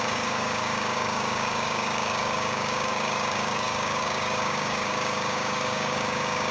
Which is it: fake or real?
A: fake